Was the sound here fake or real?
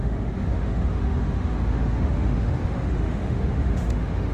fake